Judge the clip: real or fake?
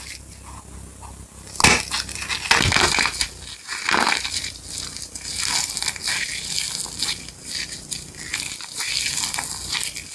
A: real